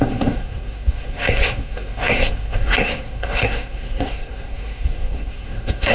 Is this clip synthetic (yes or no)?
yes